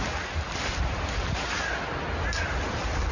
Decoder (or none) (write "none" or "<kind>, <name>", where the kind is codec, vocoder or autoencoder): none